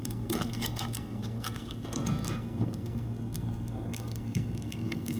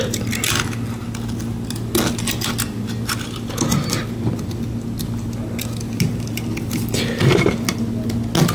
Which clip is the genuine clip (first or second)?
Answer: second